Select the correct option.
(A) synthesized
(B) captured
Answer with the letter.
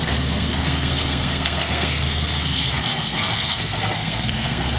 A